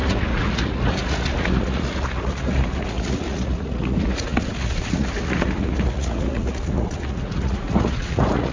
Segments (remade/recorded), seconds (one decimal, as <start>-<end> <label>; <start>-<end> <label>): 0.0-8.5 remade